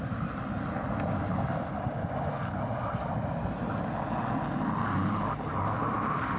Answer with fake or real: real